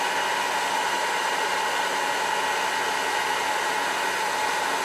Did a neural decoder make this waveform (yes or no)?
no